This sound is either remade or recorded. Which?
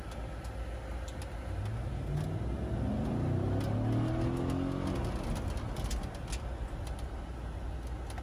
recorded